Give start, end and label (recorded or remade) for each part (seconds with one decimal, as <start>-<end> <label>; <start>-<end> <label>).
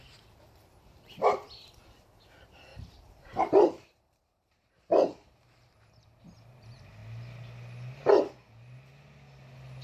0.0-2.7 recorded; 2.7-6.2 remade; 6.2-9.8 recorded